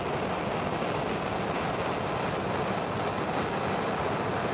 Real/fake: real